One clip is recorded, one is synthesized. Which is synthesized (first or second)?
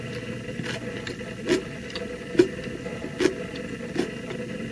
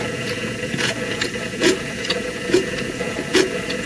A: second